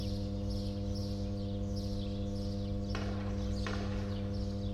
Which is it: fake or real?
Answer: real